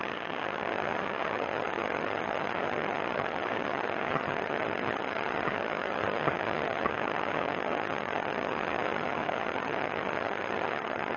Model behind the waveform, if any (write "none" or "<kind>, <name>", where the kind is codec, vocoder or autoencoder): vocoder, HiFi-GAN